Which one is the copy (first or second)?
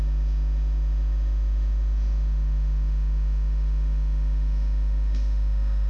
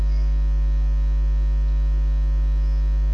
first